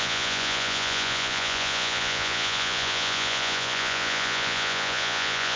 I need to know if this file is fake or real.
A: fake